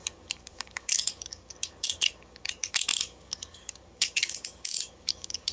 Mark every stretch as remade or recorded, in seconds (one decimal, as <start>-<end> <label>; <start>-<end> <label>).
0.0-5.5 remade